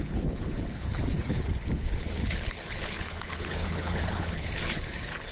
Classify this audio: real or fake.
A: fake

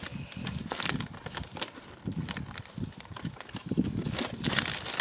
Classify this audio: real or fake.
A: real